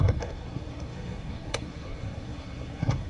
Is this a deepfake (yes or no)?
yes